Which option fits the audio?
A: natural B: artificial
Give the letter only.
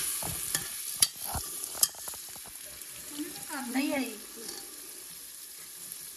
B